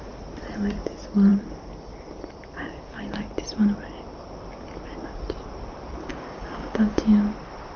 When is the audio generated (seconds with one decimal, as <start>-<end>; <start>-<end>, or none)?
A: 6.1-7.0